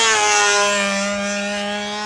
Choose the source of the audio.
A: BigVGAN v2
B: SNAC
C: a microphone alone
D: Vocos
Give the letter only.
C